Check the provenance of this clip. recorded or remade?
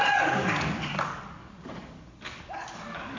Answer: remade